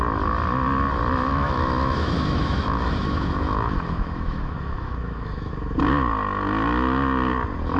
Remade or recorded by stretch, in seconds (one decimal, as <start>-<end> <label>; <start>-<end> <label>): 0.0-1.3 recorded; 1.3-5.5 remade; 5.5-7.8 recorded

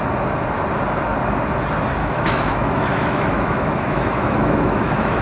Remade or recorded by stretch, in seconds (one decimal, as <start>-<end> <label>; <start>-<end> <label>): 0.0-2.0 recorded; 2.0-5.2 remade

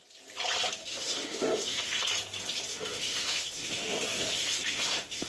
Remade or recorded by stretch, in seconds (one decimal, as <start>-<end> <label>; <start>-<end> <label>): 0.0-0.8 recorded; 0.8-2.0 remade; 2.0-2.7 recorded; 2.7-5.3 remade

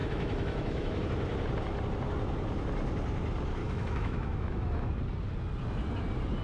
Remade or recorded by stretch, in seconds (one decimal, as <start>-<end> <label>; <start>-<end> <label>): 0.0-1.0 remade; 1.0-3.6 recorded; 3.6-4.9 remade; 4.9-6.4 recorded

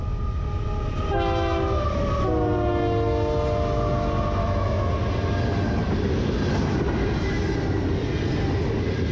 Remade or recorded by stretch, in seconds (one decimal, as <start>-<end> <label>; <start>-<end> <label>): 0.0-4.4 recorded; 4.4-4.9 remade; 4.9-9.1 recorded

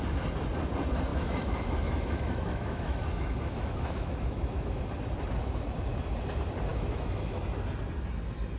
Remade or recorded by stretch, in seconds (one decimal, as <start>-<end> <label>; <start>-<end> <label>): 0.0-1.1 recorded; 1.1-4.8 remade; 4.8-6.7 recorded; 6.7-7.4 remade; 7.4-8.6 recorded

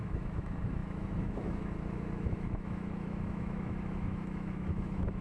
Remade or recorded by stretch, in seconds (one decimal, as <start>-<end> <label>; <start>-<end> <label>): 0.0-5.2 remade